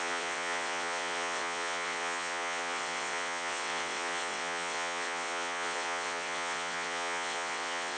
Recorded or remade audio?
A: remade